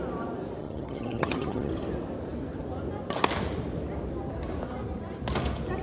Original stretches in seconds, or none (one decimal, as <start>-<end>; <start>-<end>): 0.0-0.6; 1.7-5.8